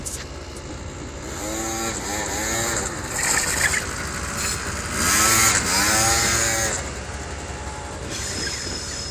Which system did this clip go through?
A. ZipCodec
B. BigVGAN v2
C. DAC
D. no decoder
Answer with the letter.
D